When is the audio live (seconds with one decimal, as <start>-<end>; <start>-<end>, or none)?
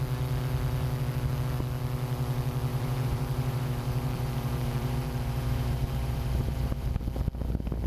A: 0.0-2.7; 7.0-7.9